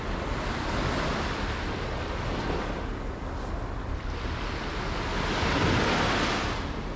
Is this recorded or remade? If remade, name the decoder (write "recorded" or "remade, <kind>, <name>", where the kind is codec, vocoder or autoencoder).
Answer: recorded